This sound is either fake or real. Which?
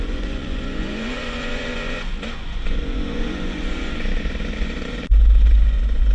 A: fake